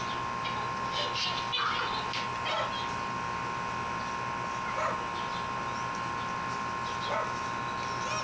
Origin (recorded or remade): recorded